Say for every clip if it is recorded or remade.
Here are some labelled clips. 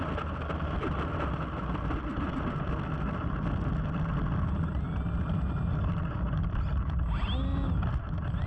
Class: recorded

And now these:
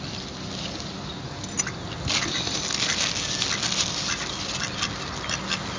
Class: recorded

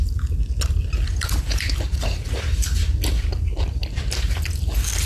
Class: recorded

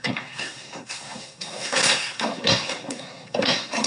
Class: remade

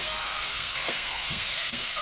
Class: remade